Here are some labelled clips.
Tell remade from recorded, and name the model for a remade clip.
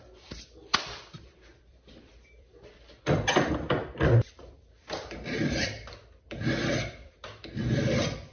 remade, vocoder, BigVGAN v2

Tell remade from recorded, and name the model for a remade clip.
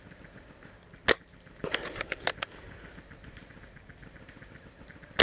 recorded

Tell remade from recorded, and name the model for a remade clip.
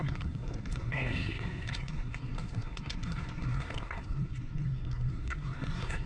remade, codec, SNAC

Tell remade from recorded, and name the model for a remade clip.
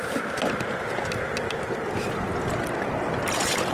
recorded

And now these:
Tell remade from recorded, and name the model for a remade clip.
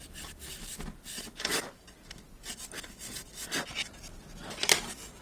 recorded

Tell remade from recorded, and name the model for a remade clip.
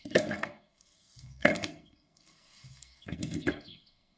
remade, codec, SNAC